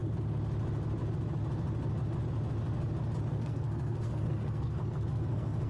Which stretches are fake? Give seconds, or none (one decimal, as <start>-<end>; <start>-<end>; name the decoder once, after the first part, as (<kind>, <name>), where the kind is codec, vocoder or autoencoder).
3.3-5.7 (codec, SNAC)